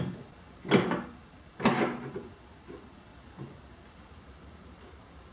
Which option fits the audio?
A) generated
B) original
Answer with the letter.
B